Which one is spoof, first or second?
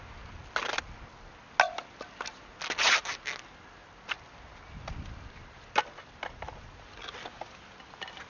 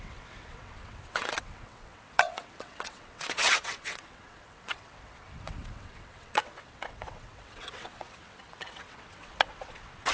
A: second